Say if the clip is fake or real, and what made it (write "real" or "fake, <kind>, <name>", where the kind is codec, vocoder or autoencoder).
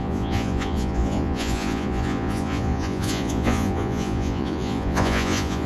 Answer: fake, vocoder, Vocos